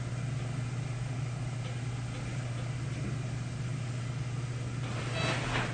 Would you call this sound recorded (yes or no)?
yes